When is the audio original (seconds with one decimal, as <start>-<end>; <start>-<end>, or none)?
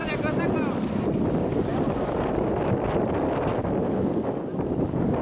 0.0-5.2